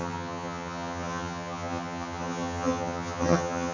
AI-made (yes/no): yes